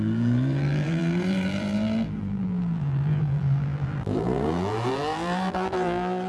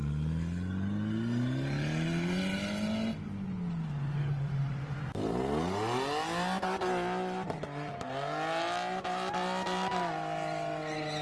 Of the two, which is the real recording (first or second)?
second